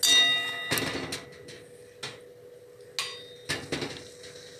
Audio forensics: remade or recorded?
recorded